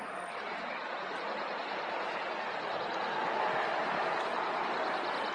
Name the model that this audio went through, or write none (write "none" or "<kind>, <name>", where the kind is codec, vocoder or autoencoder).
none